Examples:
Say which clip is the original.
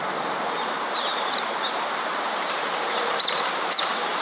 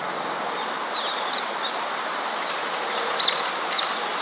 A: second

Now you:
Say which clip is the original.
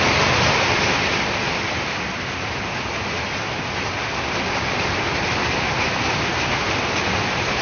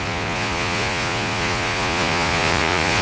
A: first